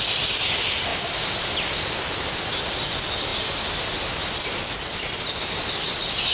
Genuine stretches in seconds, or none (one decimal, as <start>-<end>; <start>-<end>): 0.0-6.3